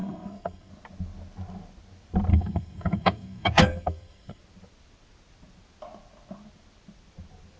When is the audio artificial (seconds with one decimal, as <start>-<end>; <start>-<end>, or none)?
0.0-0.7; 2.3-4.4